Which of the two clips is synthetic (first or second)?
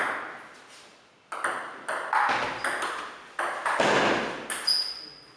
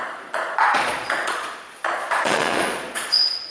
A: second